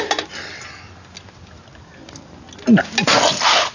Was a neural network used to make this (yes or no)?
no